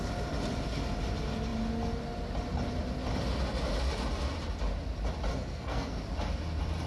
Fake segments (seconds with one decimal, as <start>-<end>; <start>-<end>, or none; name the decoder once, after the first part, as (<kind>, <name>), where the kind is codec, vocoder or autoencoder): 5.3-6.0 (codec, SNAC)